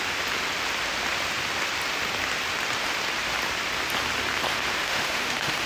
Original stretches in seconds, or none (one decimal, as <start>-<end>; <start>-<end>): 0.0-4.8